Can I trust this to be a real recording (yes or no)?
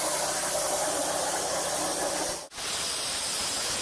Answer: yes